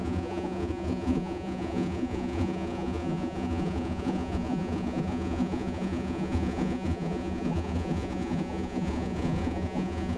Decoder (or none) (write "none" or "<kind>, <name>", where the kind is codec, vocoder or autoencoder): vocoder, Vocos